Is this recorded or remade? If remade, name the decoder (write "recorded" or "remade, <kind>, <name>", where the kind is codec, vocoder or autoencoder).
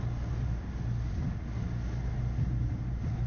recorded